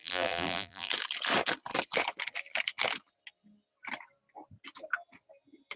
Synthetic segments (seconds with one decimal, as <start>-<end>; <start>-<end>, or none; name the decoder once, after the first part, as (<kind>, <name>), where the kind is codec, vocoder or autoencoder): 0.0-0.9 (vocoder, BigVGAN v2)